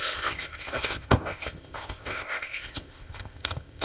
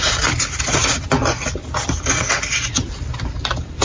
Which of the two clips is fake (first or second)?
first